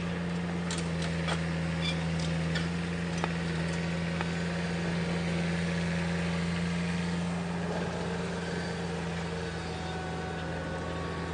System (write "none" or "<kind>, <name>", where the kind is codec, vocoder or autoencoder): none